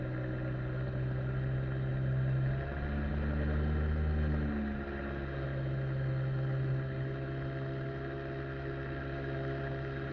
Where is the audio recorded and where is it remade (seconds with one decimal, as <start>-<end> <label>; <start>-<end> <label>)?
0.0-10.1 recorded